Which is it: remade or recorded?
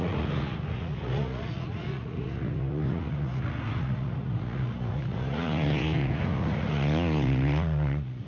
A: remade